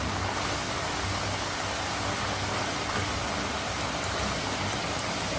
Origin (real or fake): real